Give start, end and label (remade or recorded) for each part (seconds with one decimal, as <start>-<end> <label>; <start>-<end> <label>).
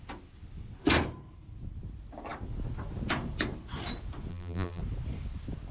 0.0-4.3 recorded; 4.3-4.8 remade; 4.8-5.7 recorded